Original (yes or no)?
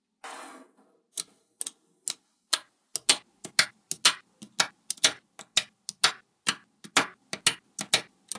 yes